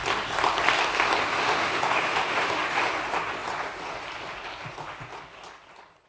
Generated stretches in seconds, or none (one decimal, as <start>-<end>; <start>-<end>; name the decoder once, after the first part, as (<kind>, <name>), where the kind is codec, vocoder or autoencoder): 1.3-2.9 (autoencoder, DAC-VAE)